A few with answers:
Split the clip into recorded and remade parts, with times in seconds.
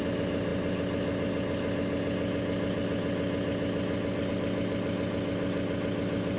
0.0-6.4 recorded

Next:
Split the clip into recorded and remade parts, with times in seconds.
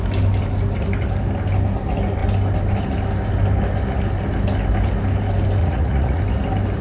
0.0-5.6 recorded; 5.6-6.2 remade; 6.2-6.8 recorded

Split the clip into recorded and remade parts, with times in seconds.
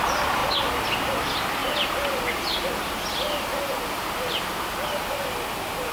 0.0-5.9 recorded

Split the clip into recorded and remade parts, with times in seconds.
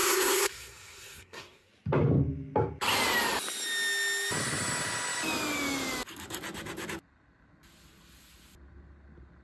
0.0-1.7 remade; 1.7-9.4 recorded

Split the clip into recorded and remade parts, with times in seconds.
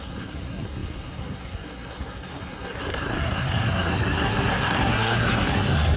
0.0-6.0 remade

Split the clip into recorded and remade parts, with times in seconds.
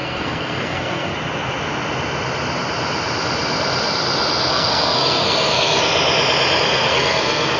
0.0-1.1 remade; 1.1-4.5 recorded; 4.5-5.9 remade; 5.9-6.6 recorded; 6.6-7.6 remade